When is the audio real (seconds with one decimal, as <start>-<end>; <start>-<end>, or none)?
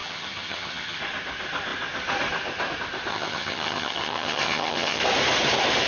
1.0-3.1; 5.0-5.9